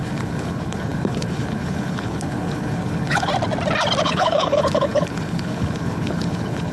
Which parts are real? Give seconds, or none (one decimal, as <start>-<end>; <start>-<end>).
3.3-4.0